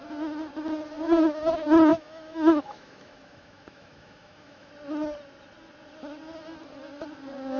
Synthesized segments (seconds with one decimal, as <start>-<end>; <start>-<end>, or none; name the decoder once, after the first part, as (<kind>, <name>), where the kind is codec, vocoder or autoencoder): 1.9-4.7 (autoencoder, DAC-VAE)